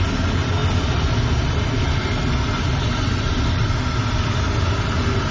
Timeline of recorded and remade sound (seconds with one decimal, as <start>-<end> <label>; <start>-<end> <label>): 0.0-5.3 recorded

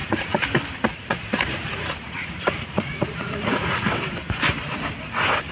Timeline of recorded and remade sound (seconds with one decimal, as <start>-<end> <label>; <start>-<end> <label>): 0.0-0.5 remade; 0.5-0.9 recorded; 0.9-3.9 remade; 3.9-5.5 recorded

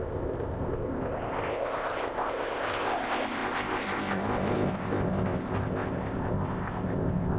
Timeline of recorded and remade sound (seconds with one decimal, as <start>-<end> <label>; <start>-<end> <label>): 0.0-7.4 remade

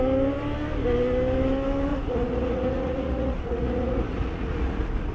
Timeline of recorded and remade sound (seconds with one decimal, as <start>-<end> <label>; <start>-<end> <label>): 0.0-1.9 recorded; 1.9-5.1 remade

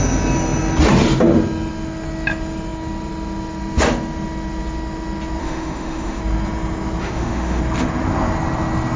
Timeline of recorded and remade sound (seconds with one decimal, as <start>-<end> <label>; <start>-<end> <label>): 0.0-5.4 recorded; 5.4-6.2 remade; 6.2-7.0 recorded; 7.0-7.6 remade; 7.6-9.0 recorded

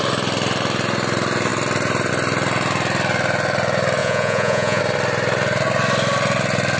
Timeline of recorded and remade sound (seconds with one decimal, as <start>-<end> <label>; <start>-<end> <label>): 0.0-4.0 recorded; 4.0-4.8 remade; 4.8-6.8 recorded

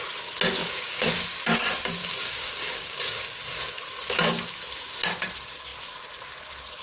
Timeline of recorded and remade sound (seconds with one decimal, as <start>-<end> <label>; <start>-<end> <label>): 0.0-0.6 recorded; 0.6-1.1 remade; 1.1-2.0 recorded; 2.0-3.3 remade; 3.3-6.8 recorded

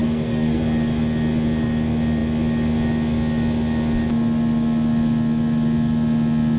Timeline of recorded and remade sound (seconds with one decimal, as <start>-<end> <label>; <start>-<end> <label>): 0.0-0.6 remade; 0.6-6.6 recorded